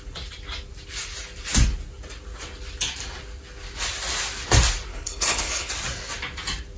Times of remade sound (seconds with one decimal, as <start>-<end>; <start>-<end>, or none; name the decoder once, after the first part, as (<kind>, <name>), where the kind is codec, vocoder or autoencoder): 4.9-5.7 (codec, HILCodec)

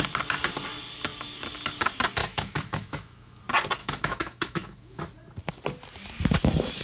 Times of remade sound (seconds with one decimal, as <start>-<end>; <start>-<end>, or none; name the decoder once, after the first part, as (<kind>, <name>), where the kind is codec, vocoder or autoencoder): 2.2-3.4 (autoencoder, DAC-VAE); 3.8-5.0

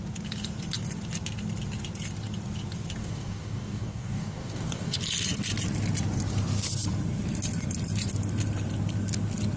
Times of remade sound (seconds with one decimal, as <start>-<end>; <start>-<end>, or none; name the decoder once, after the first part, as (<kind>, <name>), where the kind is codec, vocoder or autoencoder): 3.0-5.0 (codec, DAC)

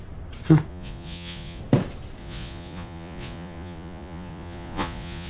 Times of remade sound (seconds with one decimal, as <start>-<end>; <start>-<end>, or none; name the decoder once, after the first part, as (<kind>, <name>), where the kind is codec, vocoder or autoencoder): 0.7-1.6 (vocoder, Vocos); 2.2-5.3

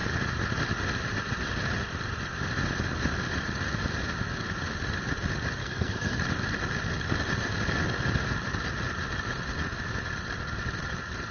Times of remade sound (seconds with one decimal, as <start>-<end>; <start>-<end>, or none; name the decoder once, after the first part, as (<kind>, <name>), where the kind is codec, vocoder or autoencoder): 5.6-6.2 (codec, SNAC)

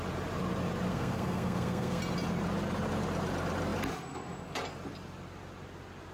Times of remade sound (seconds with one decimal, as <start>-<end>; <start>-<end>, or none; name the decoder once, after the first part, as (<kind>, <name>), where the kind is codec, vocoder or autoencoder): 0.9-2.0 (codec, SNAC)

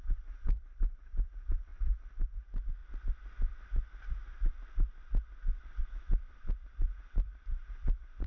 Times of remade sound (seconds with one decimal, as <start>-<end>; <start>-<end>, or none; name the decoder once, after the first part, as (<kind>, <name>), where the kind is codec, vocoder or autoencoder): 0.0-1.7 (vocoder, BigVGAN v2); 2.3-2.8; 5.8-8.3